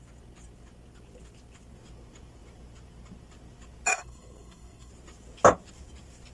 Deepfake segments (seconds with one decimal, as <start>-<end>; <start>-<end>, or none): 3.9-4.9